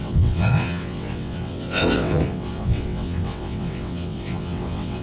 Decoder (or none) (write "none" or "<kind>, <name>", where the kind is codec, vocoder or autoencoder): vocoder, WaveNeXt